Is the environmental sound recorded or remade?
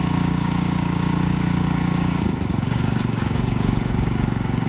remade